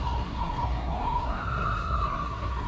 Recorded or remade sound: remade